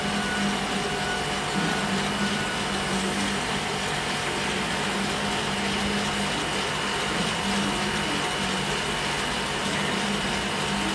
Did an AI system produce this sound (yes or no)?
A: no